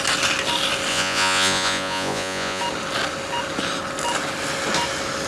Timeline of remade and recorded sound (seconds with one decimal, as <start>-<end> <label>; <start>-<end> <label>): 0.0-0.9 recorded; 0.9-2.6 remade; 2.6-5.3 recorded

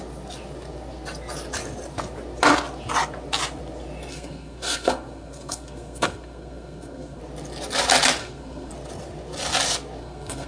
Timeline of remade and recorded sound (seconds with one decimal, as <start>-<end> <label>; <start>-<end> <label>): 0.0-4.1 recorded; 4.1-7.2 remade; 7.2-8.2 recorded; 8.2-8.7 remade; 8.7-10.0 recorded; 10.0-10.5 remade

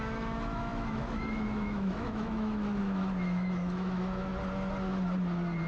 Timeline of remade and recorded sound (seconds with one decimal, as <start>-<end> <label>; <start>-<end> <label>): 0.0-4.3 remade; 4.3-5.7 recorded

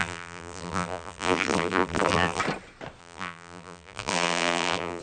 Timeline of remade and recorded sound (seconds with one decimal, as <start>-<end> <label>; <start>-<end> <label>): 0.0-2.4 remade; 2.4-3.0 recorded; 3.0-5.0 remade

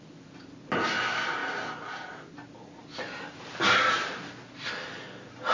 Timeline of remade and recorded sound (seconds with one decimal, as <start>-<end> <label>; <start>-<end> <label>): 0.0-5.5 recorded

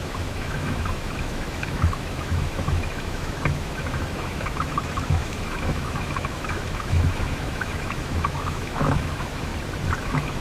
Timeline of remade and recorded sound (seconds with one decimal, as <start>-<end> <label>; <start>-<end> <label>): 0.0-9.5 remade; 9.5-10.0 recorded; 10.0-10.4 remade

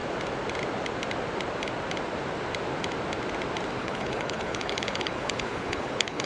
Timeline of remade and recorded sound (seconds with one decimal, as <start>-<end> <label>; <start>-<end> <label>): 0.0-3.8 recorded; 3.8-6.3 remade

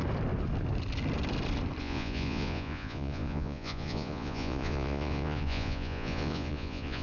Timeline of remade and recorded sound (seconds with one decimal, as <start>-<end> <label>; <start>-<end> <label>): 0.0-1.8 recorded; 1.8-7.0 remade